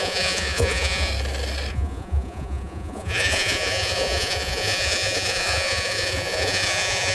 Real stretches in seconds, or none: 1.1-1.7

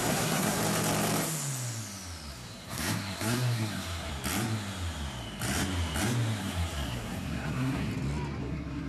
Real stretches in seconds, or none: 0.6-2.3; 4.1-6.4; 7.9-8.4

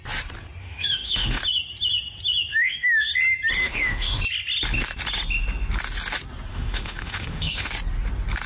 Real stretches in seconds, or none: 0.0-0.6; 1.4-2.5; 3.1-3.6; 4.2-6.5; 7.7-8.5

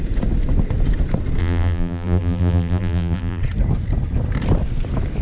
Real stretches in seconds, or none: 0.0-1.4; 3.4-5.2

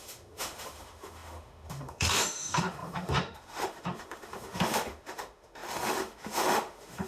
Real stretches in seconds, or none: none

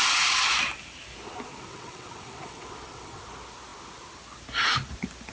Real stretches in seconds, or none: 0.0-1.5; 3.2-5.3

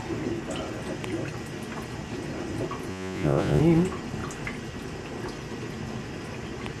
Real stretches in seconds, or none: 0.0-2.9; 3.6-6.8

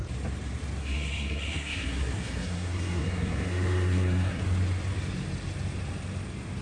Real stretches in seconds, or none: 0.0-0.8; 4.4-6.6